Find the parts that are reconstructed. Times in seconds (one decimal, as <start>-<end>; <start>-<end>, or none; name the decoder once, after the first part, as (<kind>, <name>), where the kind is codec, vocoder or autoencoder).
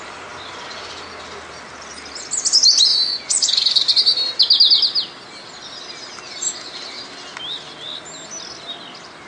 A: 2.9-3.5 (vocoder, Vocos)